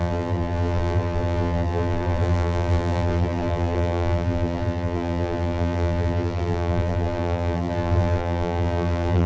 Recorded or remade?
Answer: remade